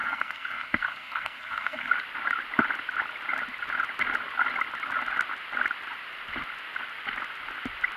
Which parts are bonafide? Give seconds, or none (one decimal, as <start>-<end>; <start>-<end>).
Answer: 1.9-8.0